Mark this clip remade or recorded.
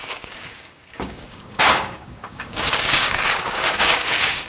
remade